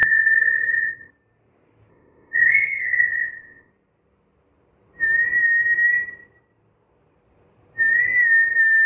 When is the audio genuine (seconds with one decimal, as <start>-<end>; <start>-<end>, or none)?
1.1-1.9; 3.7-8.9